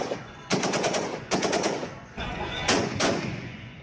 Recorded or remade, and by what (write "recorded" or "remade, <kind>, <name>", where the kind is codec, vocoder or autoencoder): remade, vocoder, Vocos